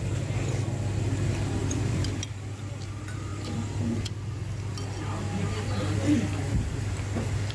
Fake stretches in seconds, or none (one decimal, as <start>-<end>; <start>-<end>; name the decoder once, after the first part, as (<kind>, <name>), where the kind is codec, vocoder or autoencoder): 1.6-2.6 (vocoder, BigVGAN v2)